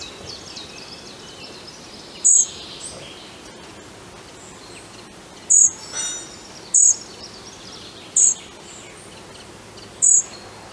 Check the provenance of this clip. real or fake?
real